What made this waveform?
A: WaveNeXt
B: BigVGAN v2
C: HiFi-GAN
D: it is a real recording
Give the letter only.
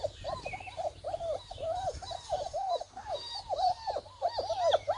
B